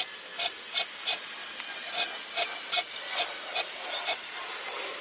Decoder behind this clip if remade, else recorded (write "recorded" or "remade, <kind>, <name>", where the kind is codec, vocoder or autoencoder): recorded